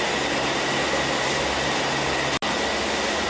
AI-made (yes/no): no